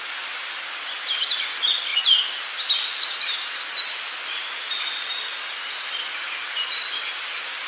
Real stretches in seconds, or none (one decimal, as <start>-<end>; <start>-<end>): 0.0-7.7